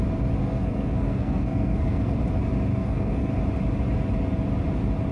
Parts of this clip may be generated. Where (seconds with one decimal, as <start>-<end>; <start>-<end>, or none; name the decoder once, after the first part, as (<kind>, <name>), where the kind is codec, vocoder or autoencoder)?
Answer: 0.4-2.2 (codec, SNAC); 2.7-3.3